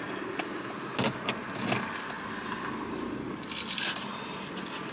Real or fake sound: real